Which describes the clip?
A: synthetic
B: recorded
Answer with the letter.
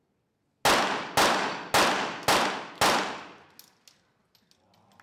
B